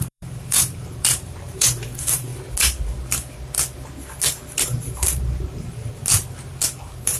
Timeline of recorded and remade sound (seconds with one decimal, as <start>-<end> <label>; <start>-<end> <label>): 0.0-2.3 remade; 2.3-4.6 recorded; 4.6-6.0 remade; 6.0-6.7 recorded; 6.7-7.2 remade